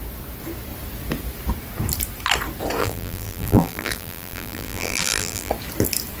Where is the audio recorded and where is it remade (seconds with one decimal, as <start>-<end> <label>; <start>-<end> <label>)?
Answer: 0.0-2.8 recorded; 2.8-5.5 remade; 5.5-6.2 recorded